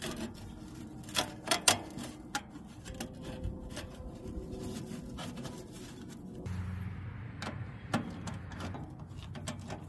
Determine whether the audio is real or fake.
real